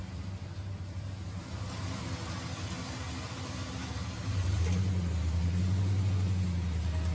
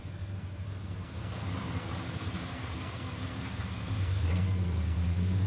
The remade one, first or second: second